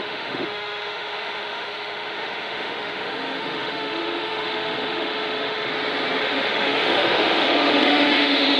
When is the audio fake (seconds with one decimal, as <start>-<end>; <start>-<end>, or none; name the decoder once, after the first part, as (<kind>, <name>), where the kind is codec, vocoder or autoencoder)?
0.0-5.7 (autoencoder, DAC-VAE); 6.2-8.6